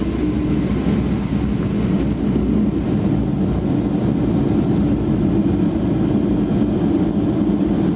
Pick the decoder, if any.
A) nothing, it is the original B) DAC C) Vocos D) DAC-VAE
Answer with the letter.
A